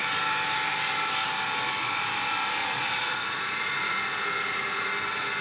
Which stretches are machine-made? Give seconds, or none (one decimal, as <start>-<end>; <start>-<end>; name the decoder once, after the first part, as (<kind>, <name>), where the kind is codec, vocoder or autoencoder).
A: 2.6-4.9 (vocoder, Vocos)